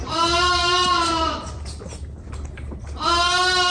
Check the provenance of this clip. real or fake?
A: real